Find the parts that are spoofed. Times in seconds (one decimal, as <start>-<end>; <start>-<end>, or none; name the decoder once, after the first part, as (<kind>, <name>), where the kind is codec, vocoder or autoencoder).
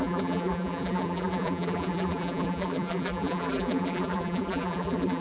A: 0.0-5.2 (vocoder, BigVGAN v2)